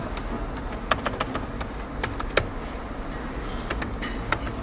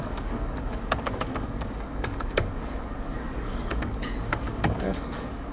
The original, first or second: first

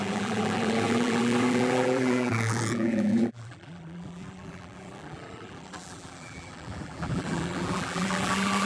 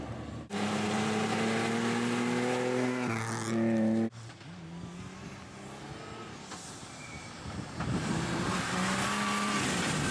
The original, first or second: second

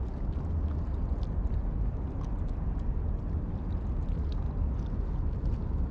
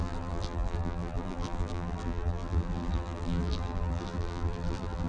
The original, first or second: first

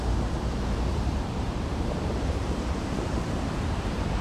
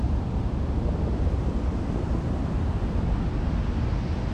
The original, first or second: second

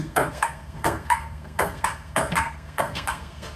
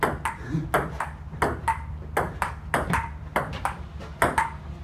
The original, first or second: second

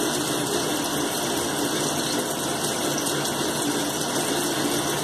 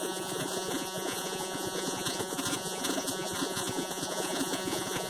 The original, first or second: first